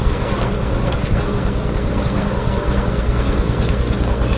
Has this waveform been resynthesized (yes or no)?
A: yes